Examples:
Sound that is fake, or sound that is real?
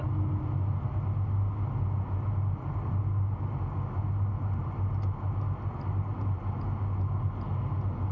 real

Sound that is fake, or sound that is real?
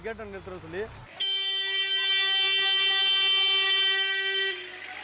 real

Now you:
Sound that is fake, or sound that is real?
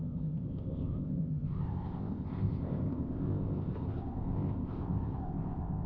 fake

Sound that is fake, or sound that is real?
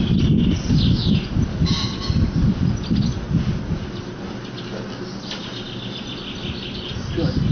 real